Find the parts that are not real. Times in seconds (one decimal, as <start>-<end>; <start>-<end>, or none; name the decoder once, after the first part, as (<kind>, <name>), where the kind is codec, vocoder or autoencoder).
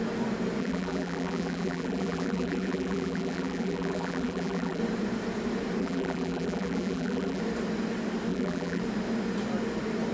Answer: 0.6-4.8 (vocoder, BigVGAN v2); 5.8-7.4; 8.3-8.8